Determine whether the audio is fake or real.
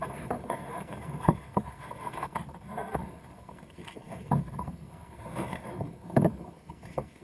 fake